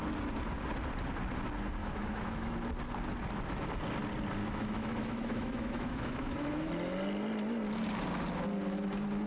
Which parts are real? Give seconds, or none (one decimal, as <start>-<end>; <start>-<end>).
0.0-1.8; 2.5-4.4; 6.7-9.3